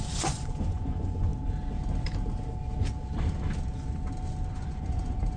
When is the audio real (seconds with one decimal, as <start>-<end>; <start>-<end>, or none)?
1.3-4.5